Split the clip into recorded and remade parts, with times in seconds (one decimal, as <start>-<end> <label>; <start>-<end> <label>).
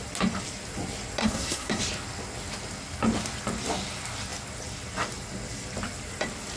0.0-1.2 recorded; 1.2-1.8 remade; 1.8-6.6 recorded